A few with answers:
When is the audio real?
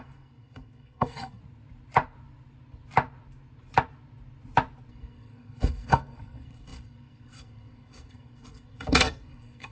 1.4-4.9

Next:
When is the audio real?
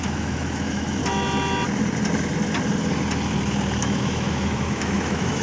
1.0-3.8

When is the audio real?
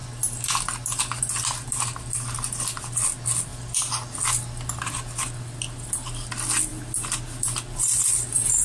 0.0-6.7; 8.0-8.6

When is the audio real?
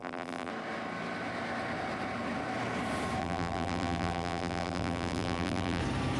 0.5-3.2; 5.8-6.2